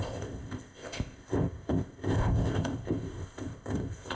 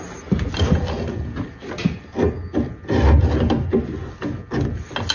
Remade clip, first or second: first